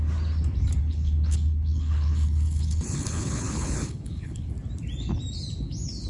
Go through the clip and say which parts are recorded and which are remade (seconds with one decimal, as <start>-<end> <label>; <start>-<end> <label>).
0.0-0.8 recorded; 0.8-4.5 remade; 4.5-6.1 recorded